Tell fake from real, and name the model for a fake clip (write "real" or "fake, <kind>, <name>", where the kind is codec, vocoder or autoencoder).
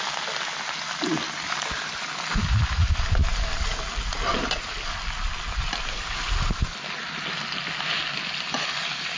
real